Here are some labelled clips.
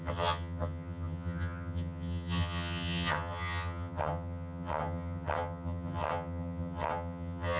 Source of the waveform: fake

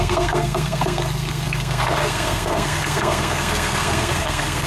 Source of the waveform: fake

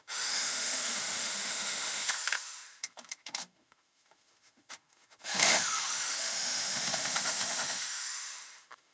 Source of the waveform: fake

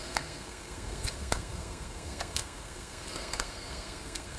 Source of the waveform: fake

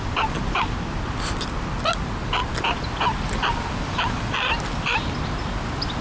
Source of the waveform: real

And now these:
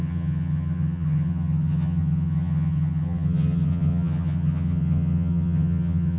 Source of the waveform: fake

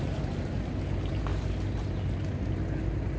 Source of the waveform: real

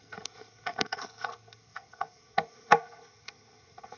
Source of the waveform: fake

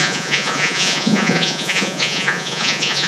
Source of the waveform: fake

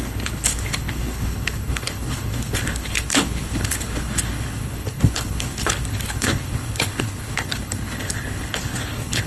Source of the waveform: fake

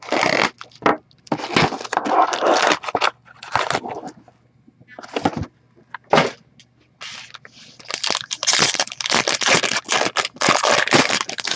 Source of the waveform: real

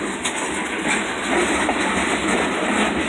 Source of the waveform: real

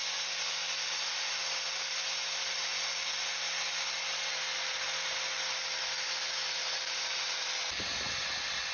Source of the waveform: real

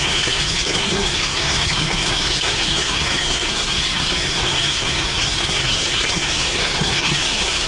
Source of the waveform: fake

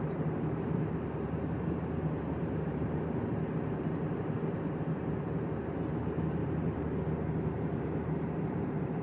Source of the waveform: fake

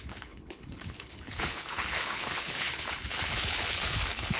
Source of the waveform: fake